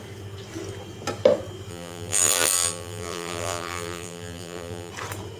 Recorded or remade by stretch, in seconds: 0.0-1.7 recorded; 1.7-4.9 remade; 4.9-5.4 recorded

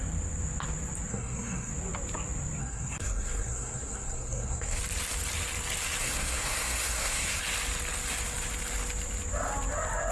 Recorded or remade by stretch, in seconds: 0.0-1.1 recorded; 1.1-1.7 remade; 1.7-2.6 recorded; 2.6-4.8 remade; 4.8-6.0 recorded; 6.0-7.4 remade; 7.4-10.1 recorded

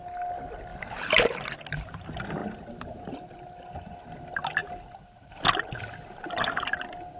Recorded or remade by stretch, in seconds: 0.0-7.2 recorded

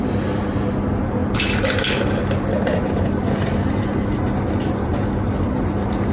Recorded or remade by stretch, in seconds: 0.0-6.1 recorded